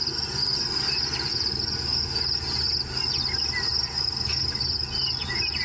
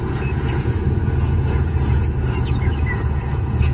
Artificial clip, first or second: second